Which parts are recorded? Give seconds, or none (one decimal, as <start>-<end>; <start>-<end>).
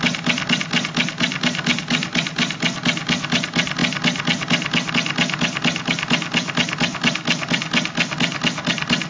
0.0-9.1